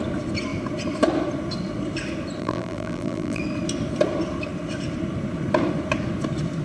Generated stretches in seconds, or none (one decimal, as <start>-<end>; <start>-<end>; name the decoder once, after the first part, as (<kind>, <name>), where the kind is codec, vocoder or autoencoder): 2.4-3.4 (vocoder, BigVGAN v2)

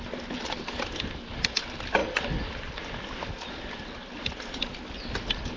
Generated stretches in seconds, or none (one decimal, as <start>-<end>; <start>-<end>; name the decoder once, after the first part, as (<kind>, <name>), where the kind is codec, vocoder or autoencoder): none

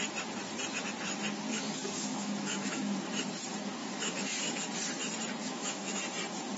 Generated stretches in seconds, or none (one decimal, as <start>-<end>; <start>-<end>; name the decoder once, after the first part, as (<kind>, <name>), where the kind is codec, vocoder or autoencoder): 1.5-3.0 (autoencoder, DAC-VAE); 3.8-4.6; 5.4-6.0

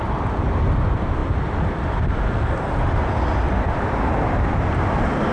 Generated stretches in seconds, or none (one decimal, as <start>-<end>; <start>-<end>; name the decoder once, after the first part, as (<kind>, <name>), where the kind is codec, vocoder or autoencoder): none

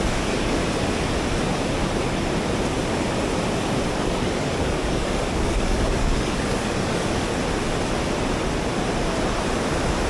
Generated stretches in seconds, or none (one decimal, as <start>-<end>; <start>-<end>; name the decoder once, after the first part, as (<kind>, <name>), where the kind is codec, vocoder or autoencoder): 0.0-0.6 (codec, DAC); 3.9-7.3